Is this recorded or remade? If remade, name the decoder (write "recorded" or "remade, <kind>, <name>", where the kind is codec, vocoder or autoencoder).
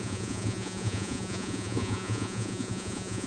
remade, vocoder, Vocos